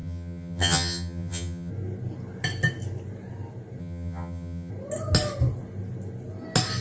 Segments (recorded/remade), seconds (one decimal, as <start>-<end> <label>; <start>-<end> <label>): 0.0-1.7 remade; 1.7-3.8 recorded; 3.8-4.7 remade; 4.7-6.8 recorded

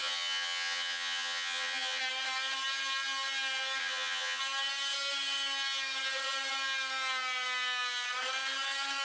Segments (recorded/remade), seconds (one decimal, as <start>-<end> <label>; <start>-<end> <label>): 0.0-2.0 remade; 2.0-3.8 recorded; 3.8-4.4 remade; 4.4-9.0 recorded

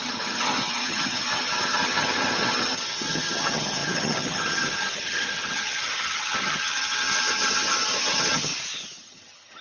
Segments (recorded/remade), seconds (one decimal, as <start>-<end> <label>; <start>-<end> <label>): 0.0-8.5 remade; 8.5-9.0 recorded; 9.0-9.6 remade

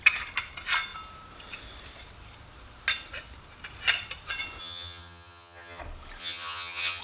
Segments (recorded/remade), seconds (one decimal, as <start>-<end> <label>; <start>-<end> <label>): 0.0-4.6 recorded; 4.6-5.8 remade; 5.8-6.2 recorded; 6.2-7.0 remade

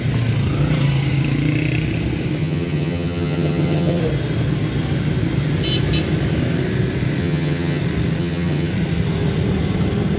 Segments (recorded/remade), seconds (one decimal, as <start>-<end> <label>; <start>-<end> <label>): 0.0-2.4 recorded; 2.4-4.0 remade; 4.0-7.2 recorded; 7.2-7.8 remade; 7.8-8.2 recorded; 8.2-8.7 remade; 8.7-10.2 recorded

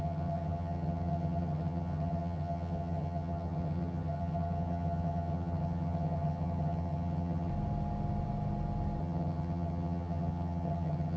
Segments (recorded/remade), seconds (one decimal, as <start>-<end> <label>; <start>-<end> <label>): 0.0-7.5 remade; 7.5-9.0 recorded; 9.0-11.2 remade

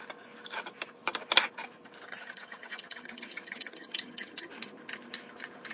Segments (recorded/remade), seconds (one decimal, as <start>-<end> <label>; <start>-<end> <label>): 0.0-2.1 recorded; 2.1-4.5 remade; 4.5-5.7 recorded